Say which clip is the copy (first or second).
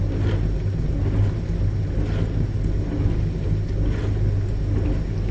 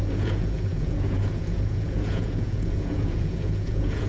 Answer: second